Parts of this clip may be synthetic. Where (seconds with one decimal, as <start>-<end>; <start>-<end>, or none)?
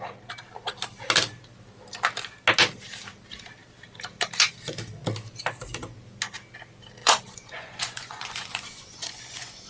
7.0-9.7